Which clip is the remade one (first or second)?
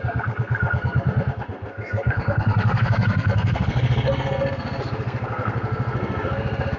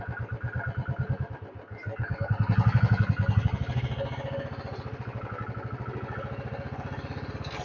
first